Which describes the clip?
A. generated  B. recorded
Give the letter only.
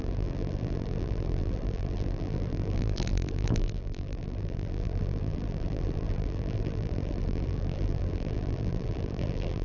A